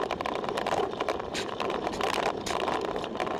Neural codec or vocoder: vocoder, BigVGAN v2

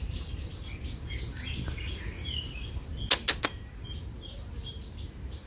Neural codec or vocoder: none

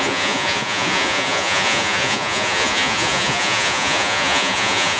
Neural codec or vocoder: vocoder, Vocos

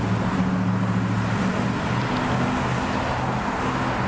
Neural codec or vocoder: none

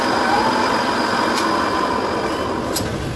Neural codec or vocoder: none